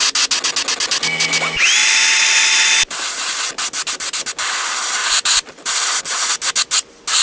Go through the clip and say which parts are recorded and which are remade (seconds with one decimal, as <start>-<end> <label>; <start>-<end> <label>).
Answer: 0.0-1.8 recorded; 1.8-2.7 remade; 2.7-5.0 recorded; 5.0-6.0 remade; 6.0-7.2 recorded